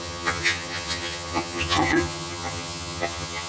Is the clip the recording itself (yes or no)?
no